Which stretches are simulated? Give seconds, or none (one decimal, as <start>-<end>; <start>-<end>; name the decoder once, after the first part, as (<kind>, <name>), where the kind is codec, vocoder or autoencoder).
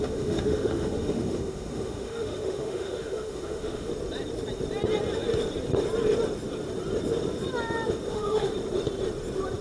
0.0-3.9 (autoencoder, DAC-VAE); 8.1-8.5